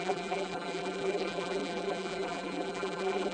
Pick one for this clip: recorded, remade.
remade